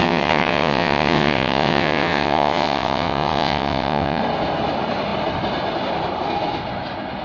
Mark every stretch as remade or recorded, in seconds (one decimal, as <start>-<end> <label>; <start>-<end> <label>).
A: 0.0-4.2 remade; 4.2-7.2 recorded